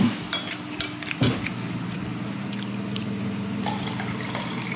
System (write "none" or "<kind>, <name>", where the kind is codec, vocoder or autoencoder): vocoder, BigVGAN v2